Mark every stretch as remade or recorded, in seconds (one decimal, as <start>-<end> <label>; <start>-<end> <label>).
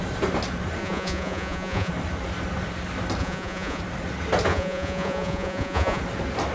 0.0-0.8 recorded; 0.8-1.9 remade; 1.9-3.2 recorded; 3.2-3.8 remade; 3.8-4.5 recorded; 4.5-6.0 remade; 6.0-6.5 recorded